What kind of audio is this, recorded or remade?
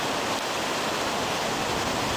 recorded